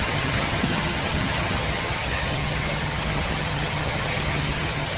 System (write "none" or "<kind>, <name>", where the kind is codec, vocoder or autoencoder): vocoder, HiFi-GAN